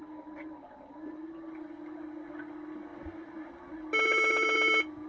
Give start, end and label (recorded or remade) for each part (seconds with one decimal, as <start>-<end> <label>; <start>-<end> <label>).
0.0-5.1 recorded